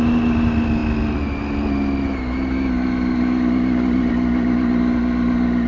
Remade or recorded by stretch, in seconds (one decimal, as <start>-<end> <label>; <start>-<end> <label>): 0.0-5.7 recorded